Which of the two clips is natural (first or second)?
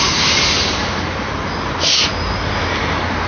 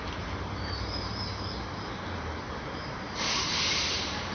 first